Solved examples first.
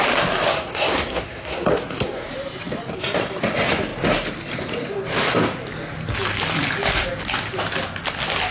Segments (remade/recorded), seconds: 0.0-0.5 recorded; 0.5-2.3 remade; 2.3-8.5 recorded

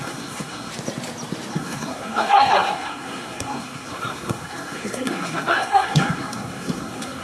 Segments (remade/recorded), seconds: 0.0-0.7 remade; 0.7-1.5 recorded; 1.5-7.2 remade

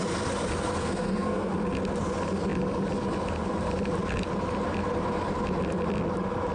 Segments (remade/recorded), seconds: 0.0-0.8 recorded; 0.8-1.5 remade; 1.5-6.5 recorded

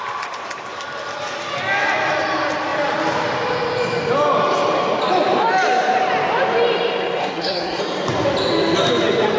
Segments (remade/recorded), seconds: 0.0-7.2 recorded; 7.2-7.8 remade; 7.8-9.4 recorded

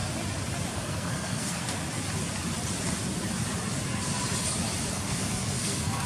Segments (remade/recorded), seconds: 0.0-0.7 recorded; 0.7-1.8 remade; 1.8-4.9 recorded; 4.9-6.1 remade